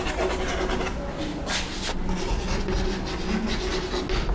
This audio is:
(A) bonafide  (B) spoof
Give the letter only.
A